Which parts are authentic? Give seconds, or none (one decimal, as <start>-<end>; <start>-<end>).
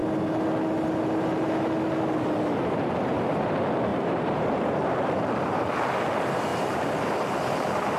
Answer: 0.0-3.9; 4.9-6.5; 7.1-8.0